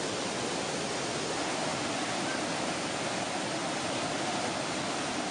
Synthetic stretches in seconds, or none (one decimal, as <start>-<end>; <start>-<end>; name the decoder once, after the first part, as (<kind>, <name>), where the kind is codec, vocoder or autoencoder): none